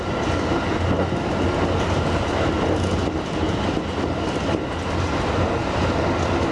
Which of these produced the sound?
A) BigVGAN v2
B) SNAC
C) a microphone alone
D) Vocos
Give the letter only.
C